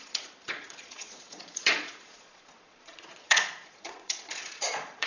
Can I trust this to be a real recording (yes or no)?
no